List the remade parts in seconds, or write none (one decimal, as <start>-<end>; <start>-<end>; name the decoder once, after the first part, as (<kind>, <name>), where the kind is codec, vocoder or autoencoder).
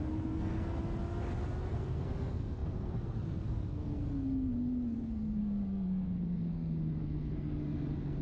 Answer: 0.0-0.8 (codec, SNAC); 1.7-8.2